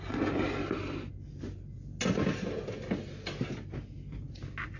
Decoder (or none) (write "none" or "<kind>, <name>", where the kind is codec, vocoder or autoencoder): none